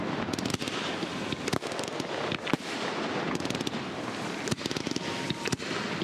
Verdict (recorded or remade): recorded